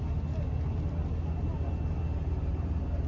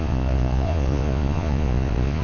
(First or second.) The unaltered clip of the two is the first